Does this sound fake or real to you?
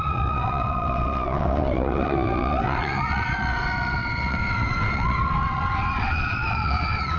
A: fake